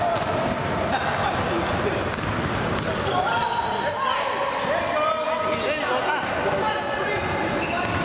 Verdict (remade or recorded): recorded